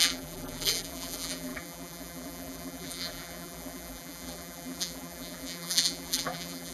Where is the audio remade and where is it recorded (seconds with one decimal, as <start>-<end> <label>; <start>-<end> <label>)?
0.0-6.7 remade